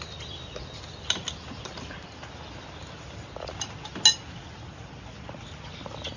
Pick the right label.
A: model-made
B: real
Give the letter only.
B